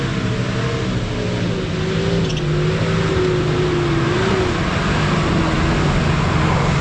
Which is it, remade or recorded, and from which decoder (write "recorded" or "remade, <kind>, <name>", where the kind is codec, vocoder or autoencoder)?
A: recorded